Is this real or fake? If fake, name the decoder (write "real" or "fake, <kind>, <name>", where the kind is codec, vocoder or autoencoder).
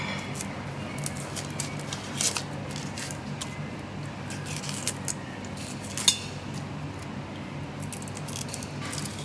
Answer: real